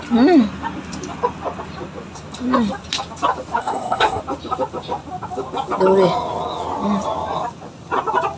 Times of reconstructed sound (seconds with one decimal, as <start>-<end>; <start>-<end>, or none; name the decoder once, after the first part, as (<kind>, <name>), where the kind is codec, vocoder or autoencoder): 3.6-4.2 (codec, SNAC)